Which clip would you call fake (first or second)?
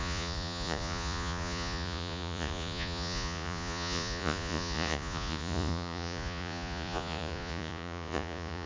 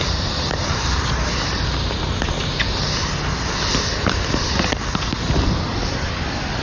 first